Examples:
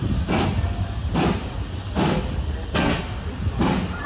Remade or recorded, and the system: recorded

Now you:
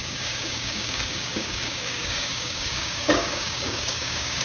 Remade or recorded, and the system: remade, codec, DAC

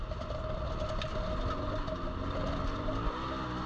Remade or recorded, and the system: recorded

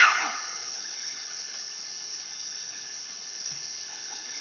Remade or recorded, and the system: remade, codec, HILCodec